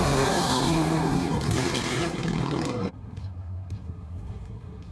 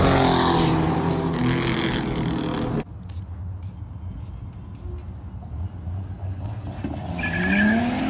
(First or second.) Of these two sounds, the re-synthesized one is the first